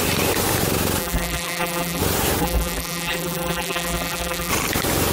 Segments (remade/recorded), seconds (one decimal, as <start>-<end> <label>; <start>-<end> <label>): 0.0-1.0 recorded; 1.0-2.0 remade; 2.0-2.4 recorded; 2.4-4.5 remade; 4.5-5.1 recorded